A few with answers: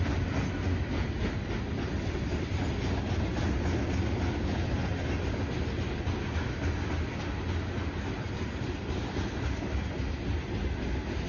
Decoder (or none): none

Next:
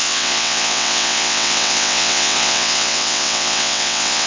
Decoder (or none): vocoder, WaveNeXt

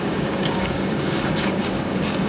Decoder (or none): codec, DAC